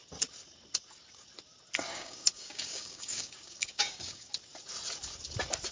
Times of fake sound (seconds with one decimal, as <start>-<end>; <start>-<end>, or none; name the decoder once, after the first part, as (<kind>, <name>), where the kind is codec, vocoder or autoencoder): 1.9-4.3 (codec, DAC)